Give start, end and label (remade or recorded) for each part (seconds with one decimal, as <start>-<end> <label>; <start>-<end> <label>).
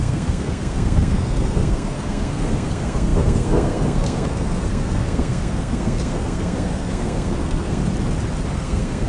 0.0-7.8 remade; 7.8-8.5 recorded; 8.5-9.1 remade